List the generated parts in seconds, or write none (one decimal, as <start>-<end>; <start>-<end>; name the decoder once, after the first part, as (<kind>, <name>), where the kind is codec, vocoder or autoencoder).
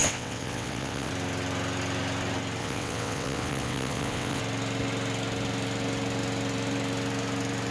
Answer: 0.0-1.1 (vocoder, WaveNeXt); 2.6-4.4